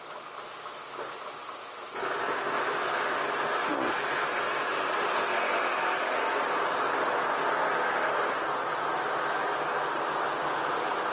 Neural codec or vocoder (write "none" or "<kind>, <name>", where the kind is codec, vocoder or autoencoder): none